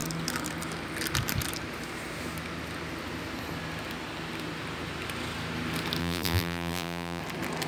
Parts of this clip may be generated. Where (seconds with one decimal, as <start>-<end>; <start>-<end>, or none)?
6.0-7.2